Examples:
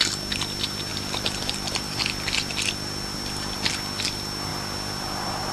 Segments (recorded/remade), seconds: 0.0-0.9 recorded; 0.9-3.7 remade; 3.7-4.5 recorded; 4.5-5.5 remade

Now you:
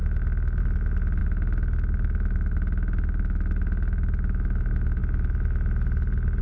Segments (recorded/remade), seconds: 0.0-0.6 remade; 0.6-1.2 recorded; 1.2-5.0 remade; 5.0-6.4 recorded

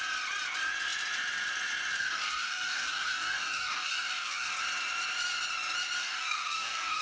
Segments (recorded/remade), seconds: 0.0-2.0 recorded; 2.0-4.5 remade; 4.5-6.0 recorded; 6.0-7.0 remade

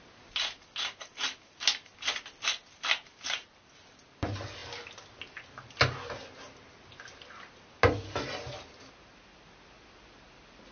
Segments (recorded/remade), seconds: 0.0-10.7 recorded

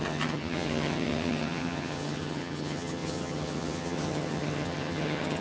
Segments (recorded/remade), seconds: 0.0-5.4 remade